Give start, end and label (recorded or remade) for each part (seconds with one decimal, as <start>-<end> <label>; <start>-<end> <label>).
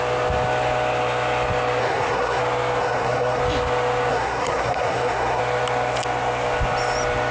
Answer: 0.0-1.8 recorded; 1.8-2.4 remade; 2.4-2.8 recorded; 2.8-3.4 remade; 3.4-4.1 recorded; 4.1-5.4 remade; 5.4-7.3 recorded